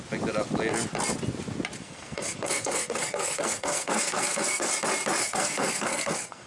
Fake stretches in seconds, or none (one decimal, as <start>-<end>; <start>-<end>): 1.8-4.7; 5.2-6.5